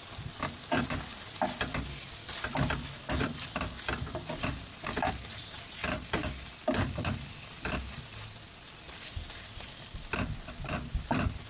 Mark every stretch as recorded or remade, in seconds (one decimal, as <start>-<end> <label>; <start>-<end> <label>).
0.0-11.5 recorded